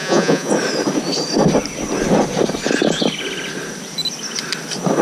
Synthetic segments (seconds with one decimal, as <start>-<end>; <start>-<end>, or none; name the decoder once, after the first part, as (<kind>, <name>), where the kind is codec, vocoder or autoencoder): 0.0-0.5 (vocoder, Vocos)